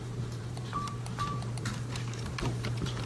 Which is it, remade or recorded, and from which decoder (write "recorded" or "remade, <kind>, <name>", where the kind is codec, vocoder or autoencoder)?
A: remade, vocoder, BigVGAN v2